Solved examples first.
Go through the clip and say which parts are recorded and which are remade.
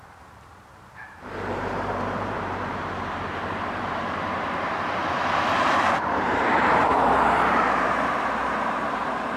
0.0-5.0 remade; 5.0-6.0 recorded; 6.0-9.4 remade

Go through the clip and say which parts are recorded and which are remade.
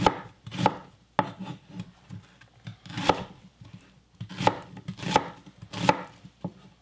0.0-0.8 remade; 0.8-1.5 recorded; 1.5-6.8 remade